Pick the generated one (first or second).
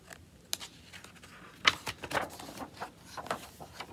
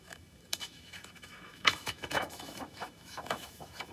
second